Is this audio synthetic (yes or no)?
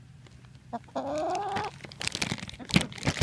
no